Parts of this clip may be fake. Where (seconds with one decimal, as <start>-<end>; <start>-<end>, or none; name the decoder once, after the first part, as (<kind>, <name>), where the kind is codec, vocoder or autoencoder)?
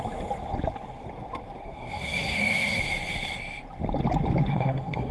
1.6-2.8 (codec, SNAC); 4.5-5.1